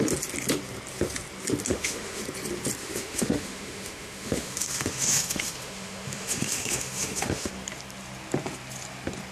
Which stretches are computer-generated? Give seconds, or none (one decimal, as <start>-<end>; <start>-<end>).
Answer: 1.7-2.2; 2.8-7.5